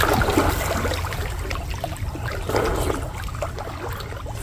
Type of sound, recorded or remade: recorded